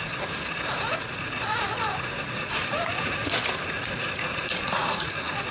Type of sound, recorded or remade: remade